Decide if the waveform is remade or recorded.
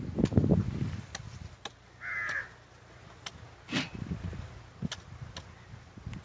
recorded